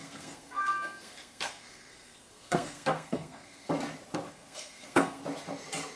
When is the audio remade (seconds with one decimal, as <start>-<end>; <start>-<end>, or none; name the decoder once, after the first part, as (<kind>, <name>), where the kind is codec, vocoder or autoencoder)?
0.0-3.7 (codec, SNAC); 4.3-5.2